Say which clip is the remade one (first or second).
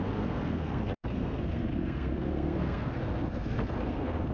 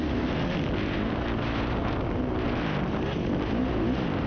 first